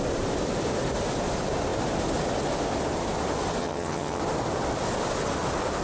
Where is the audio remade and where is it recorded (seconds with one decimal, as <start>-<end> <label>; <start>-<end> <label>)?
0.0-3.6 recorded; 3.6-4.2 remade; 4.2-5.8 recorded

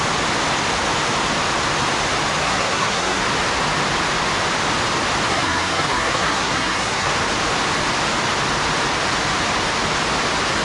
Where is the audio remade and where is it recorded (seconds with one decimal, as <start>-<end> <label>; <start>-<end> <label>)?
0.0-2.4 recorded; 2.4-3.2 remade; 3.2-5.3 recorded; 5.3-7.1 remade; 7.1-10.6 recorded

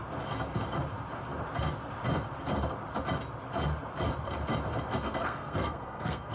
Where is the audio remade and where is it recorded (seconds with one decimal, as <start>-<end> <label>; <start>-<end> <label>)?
0.0-5.2 recorded; 5.2-6.3 remade

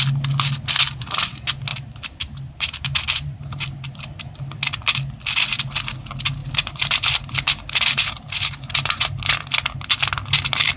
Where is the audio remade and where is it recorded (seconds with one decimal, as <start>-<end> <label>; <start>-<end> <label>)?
0.0-1.7 recorded; 1.7-3.6 remade; 3.6-6.4 recorded; 6.4-9.2 remade; 9.2-10.8 recorded

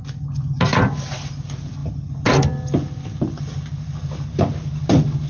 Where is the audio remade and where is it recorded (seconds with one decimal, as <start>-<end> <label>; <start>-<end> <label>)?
0.0-5.3 recorded